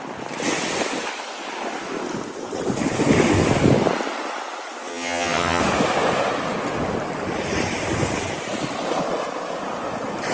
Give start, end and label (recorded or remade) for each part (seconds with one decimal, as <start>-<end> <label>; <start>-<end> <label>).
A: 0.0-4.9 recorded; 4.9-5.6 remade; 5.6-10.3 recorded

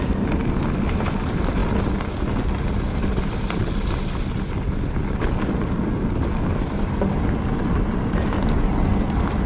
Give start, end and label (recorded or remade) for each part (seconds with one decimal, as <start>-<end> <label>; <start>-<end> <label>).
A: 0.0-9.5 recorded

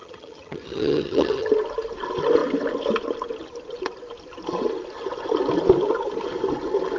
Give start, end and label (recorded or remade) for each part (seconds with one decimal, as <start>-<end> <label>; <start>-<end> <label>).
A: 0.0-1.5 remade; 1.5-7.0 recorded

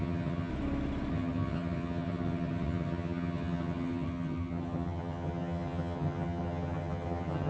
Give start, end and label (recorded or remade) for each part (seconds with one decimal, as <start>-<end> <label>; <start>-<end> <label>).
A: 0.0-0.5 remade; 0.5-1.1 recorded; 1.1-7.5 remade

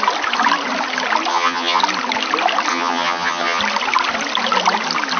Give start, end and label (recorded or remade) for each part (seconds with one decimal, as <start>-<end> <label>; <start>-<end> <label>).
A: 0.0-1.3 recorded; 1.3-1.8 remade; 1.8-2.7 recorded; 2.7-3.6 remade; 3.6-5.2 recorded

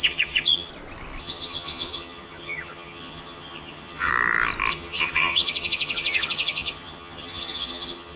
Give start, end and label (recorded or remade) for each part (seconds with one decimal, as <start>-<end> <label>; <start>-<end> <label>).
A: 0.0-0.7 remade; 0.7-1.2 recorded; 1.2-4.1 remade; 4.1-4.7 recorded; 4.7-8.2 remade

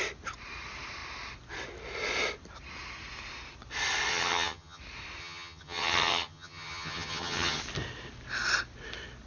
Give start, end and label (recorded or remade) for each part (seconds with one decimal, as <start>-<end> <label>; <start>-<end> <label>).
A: 0.0-4.1 recorded; 4.1-4.8 remade; 4.8-5.2 recorded; 5.2-7.6 remade; 7.6-9.3 recorded